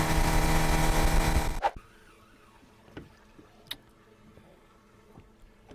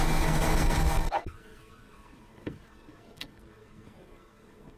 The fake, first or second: second